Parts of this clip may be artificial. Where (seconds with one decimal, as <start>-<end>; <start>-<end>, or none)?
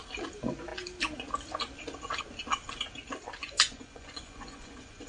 3.4-5.1